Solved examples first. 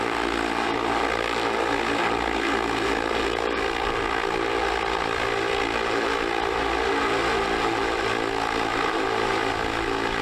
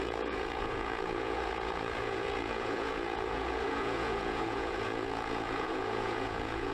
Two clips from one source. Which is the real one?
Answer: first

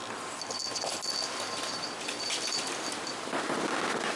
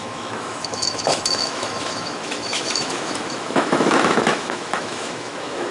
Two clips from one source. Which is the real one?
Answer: first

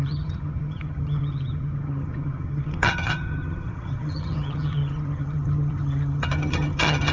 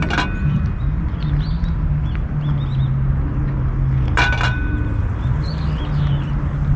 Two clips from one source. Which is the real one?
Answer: second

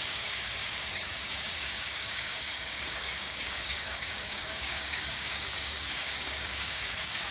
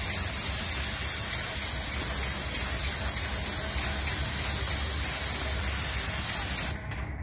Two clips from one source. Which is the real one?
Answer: second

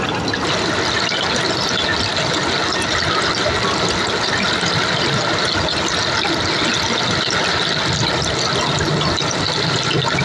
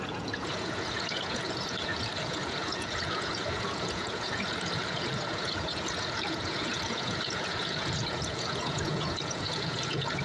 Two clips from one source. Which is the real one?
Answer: first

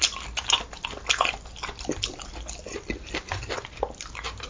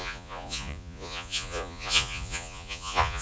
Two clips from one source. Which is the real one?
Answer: first